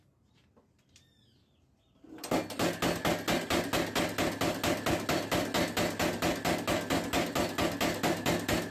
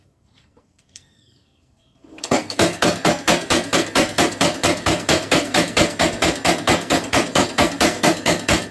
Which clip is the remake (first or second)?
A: second